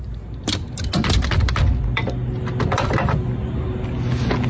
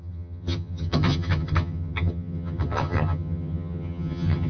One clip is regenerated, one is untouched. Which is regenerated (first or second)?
second